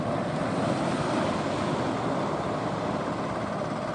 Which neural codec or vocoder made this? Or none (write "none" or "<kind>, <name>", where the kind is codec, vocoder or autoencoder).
none